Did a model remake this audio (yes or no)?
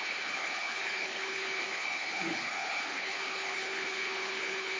yes